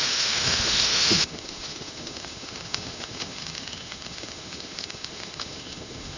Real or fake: fake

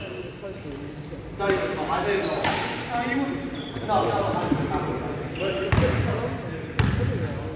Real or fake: real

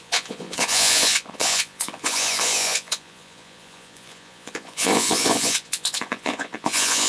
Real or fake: fake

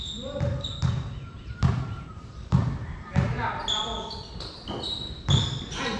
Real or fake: real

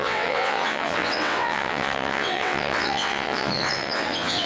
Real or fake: fake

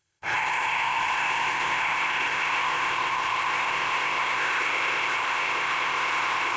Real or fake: fake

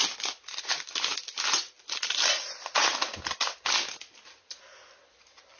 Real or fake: real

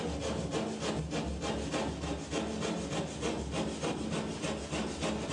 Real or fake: real